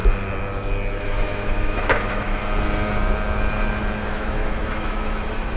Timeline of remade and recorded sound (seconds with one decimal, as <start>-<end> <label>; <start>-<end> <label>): 0.0-1.0 recorded; 1.0-2.4 remade; 2.4-4.1 recorded; 4.1-5.6 remade